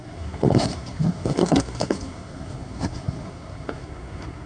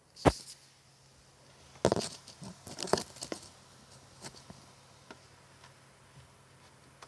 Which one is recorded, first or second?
second